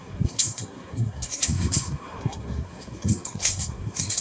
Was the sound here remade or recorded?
remade